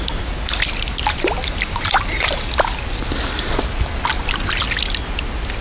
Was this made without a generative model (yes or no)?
yes